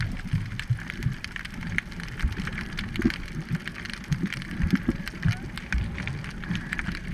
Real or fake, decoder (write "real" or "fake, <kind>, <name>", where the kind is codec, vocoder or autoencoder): fake, vocoder, BigVGAN v2